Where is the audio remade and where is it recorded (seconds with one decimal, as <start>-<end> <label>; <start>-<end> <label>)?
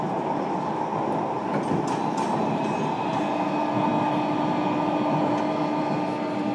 0.0-6.5 recorded